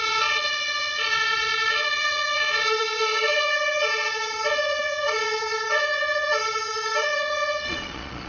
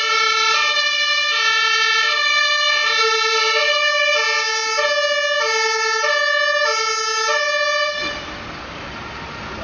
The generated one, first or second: first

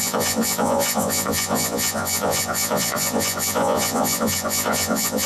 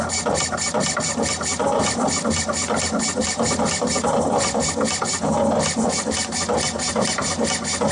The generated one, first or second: first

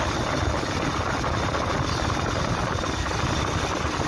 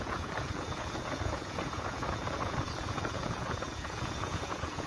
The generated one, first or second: second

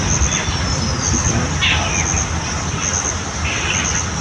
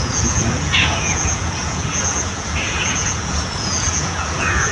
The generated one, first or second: second